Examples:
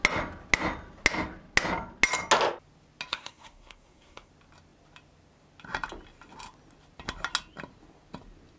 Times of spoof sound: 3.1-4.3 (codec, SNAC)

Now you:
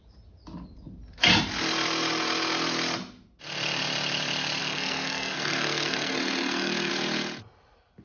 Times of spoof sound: 4.6-6.9 (codec, SNAC)

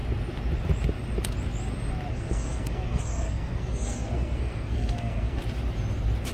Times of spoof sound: 2.1-5.4 (codec, SNAC)

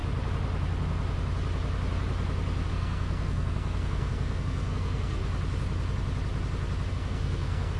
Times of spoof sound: 2.7-5.2 (codec, SNAC); 6.9-7.8

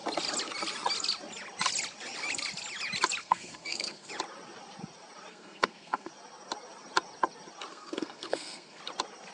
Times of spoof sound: 3.2-4.1 (codec, SNAC); 5.3-6.1; 7.7-8.8